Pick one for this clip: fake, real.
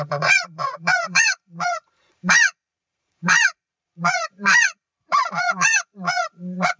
fake